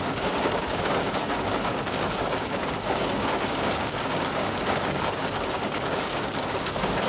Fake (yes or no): yes